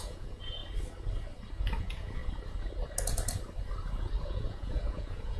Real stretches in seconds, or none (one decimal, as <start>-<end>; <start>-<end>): 0.6-1.8; 2.2-4.2